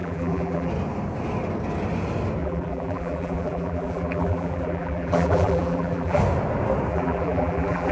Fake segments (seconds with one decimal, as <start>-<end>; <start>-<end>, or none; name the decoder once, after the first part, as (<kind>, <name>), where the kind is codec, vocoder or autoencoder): 0.0-0.7 (vocoder, BigVGAN v2); 2.4-6.2; 6.9-7.9